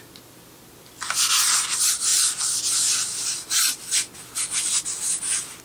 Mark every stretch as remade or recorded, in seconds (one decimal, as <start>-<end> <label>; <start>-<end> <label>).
0.0-5.6 recorded